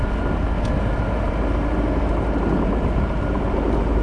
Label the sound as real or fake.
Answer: real